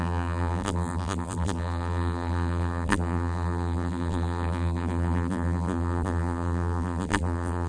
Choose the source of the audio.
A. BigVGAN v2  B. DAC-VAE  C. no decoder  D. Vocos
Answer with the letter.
A